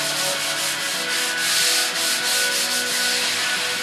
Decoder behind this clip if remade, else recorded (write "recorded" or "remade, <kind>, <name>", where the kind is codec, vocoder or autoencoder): recorded